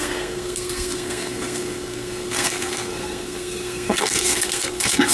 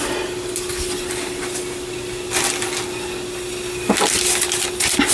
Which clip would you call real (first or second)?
second